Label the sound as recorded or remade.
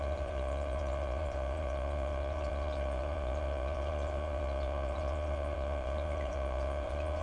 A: remade